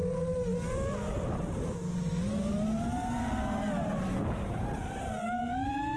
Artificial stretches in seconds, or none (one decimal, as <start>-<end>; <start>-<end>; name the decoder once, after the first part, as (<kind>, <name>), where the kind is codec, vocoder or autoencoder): none